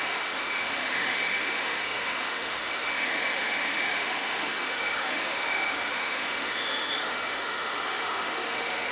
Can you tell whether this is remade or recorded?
remade